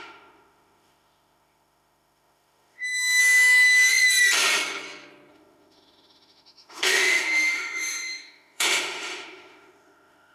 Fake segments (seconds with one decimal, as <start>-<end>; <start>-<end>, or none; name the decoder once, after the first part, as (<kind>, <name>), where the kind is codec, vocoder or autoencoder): 0.0-3.2 (autoencoder, DAC-VAE); 5.3-10.3